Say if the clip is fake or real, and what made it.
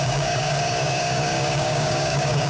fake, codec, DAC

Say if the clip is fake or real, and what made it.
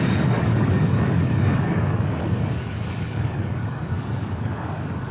fake, codec, DAC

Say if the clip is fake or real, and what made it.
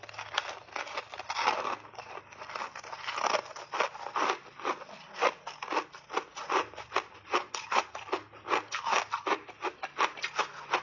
real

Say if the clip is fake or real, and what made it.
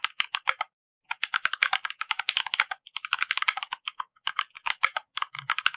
fake, codec, DAC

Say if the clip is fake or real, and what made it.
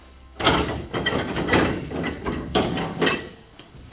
fake, codec, DAC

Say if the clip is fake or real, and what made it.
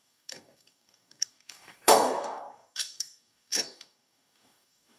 fake, codec, DAC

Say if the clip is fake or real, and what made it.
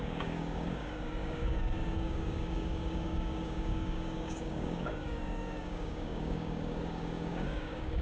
fake, codec, DAC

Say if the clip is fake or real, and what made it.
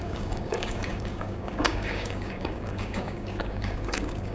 fake, codec, DAC